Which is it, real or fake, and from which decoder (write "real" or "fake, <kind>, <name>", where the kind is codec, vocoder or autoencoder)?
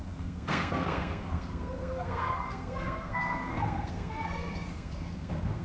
fake, codec, SNAC